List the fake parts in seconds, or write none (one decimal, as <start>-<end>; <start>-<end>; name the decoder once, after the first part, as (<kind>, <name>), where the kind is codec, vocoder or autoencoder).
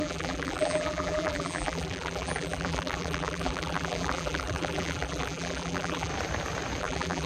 0.0-6.1 (vocoder, BigVGAN v2); 6.8-7.3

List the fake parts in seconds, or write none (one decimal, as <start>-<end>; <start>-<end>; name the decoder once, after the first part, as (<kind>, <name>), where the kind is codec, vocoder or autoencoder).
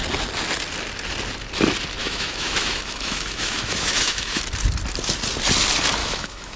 2.0-4.4 (autoencoder, DAC-VAE); 6.0-6.6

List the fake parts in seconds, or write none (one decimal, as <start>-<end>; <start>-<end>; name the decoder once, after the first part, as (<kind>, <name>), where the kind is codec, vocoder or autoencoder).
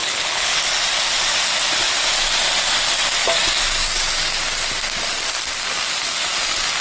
0.0-0.6 (codec, HILCodec)